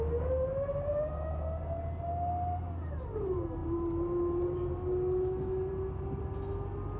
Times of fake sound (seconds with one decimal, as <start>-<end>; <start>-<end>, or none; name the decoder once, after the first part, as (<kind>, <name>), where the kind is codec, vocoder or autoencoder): none